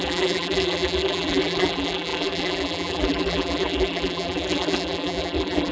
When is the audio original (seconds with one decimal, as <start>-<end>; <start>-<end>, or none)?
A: none